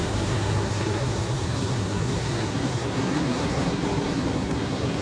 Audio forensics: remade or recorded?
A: remade